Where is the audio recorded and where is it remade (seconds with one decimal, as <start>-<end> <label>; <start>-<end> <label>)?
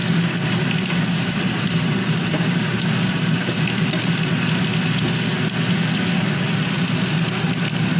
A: 0.0-8.0 recorded